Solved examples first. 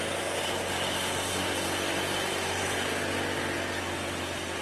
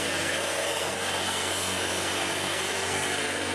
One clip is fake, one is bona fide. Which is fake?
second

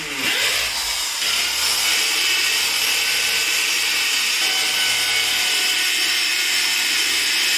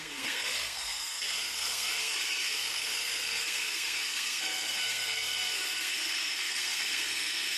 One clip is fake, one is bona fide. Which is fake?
second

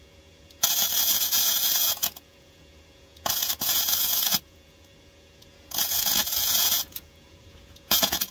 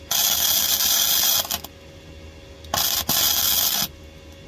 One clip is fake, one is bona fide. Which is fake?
first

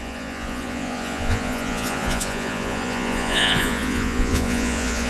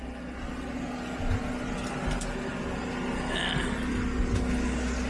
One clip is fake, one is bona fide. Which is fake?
first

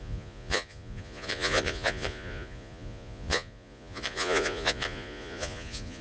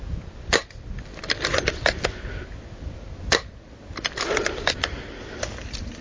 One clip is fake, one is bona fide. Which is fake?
first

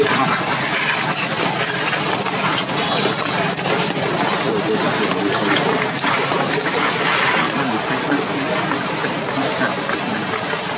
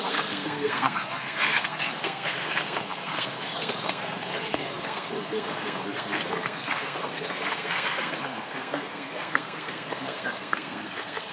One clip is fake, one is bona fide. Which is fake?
second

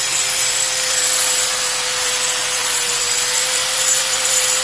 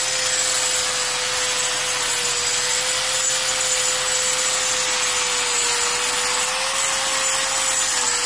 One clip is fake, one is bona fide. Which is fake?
first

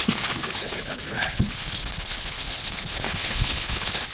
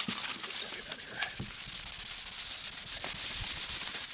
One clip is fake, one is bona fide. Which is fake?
first